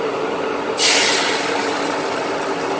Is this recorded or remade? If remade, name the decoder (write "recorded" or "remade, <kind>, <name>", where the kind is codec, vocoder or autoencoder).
recorded